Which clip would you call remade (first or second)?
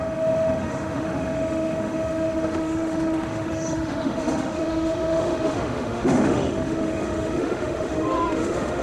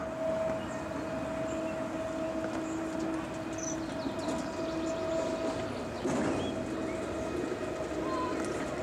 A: first